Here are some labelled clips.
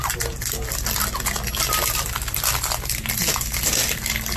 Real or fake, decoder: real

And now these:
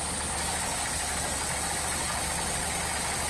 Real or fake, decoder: real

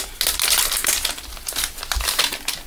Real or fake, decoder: real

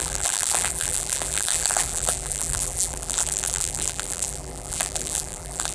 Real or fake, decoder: fake, vocoder, BigVGAN v2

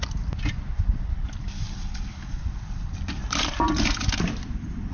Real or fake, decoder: fake, vocoder, BigVGAN v2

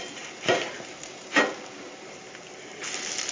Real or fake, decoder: real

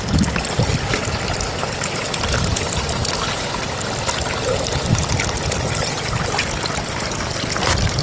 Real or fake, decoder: real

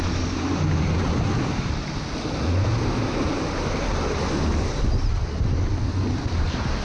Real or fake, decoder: real